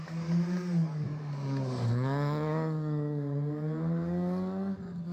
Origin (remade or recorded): remade